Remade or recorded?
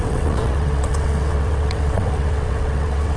remade